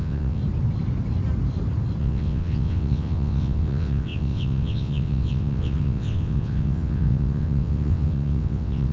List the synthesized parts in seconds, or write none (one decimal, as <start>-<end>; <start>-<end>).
0.0-0.4; 2.0-8.9

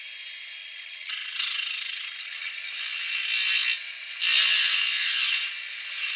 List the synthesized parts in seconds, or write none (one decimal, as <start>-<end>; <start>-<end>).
0.6-2.7

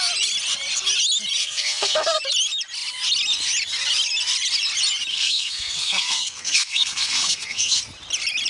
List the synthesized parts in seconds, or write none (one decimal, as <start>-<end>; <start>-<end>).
1.4-2.2; 5.1-7.8